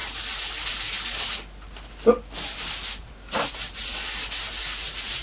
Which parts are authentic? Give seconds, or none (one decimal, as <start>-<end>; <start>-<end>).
0.0-5.2